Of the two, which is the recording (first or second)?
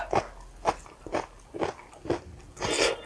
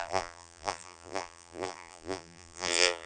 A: first